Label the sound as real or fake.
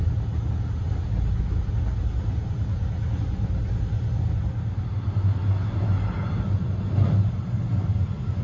real